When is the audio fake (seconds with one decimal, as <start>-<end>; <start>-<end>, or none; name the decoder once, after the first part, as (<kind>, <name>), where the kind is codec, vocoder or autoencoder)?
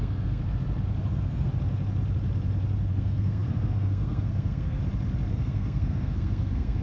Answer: 0.0-0.4 (codec, SNAC); 1.1-1.5; 2.9-4.8; 5.3-6.8